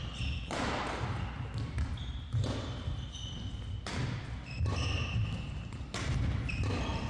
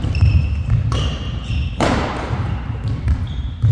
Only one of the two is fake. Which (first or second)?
second